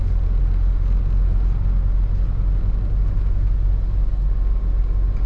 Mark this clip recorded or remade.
recorded